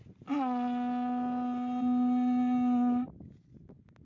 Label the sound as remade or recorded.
recorded